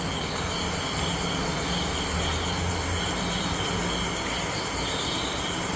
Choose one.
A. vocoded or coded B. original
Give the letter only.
B